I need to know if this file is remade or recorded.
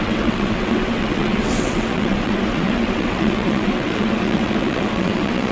remade